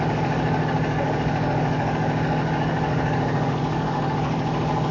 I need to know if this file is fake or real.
fake